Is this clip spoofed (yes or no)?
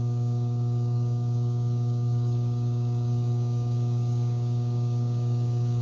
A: yes